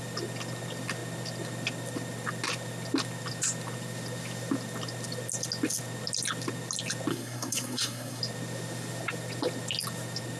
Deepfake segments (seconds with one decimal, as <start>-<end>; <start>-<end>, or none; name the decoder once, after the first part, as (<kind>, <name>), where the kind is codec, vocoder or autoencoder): 7.1-8.2 (codec, SNAC)